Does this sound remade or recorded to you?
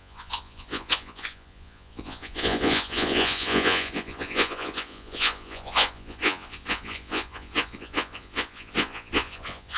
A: remade